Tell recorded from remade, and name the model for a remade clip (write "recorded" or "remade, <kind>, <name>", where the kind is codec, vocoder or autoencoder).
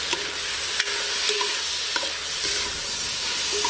recorded